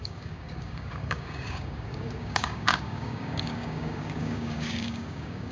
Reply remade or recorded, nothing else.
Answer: remade